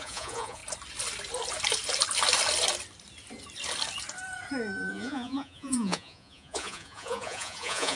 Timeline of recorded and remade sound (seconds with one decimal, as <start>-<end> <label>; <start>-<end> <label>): 0.0-0.6 remade; 0.6-4.9 recorded; 4.9-8.0 remade